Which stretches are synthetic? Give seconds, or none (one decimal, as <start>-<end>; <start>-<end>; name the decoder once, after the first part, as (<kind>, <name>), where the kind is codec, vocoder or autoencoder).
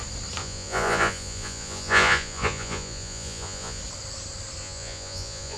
0.4-3.8 (vocoder, Vocos); 4.6-5.6